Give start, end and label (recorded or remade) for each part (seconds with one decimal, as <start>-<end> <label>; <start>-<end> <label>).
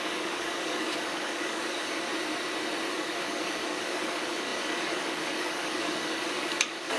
0.0-2.1 remade; 2.1-2.9 recorded; 2.9-7.0 remade